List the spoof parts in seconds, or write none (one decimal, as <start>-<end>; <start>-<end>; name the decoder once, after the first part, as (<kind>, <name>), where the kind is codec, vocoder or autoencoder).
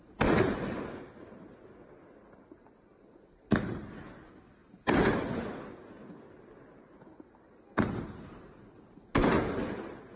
none